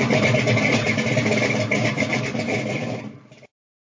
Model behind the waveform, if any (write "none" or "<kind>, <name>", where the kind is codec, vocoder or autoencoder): vocoder, BigVGAN v2